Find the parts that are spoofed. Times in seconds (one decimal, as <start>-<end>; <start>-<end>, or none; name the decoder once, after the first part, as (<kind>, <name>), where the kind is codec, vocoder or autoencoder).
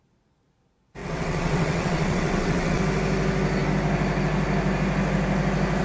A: 1.0-2.8 (vocoder, WaveNeXt)